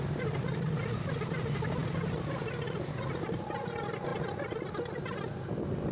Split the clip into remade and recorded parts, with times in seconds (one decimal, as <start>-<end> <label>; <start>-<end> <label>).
0.0-5.9 recorded